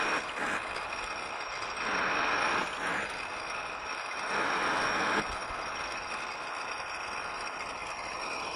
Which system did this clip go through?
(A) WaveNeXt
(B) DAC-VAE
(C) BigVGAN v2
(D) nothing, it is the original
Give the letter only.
D